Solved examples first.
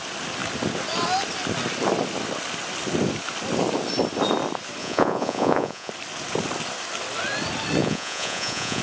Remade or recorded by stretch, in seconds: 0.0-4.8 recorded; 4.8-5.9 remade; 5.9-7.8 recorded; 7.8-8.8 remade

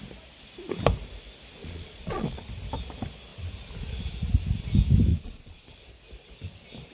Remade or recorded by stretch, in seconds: 0.0-1.6 recorded; 1.6-2.5 remade; 2.5-5.1 recorded; 5.1-5.7 remade; 5.7-6.9 recorded

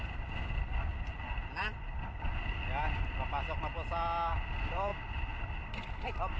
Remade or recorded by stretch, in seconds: 0.0-6.4 recorded